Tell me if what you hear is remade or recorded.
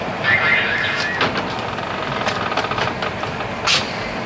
recorded